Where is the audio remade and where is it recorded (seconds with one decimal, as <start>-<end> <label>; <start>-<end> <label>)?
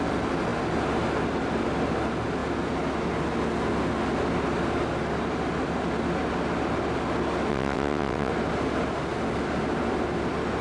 0.0-7.5 recorded; 7.5-8.3 remade; 8.3-10.6 recorded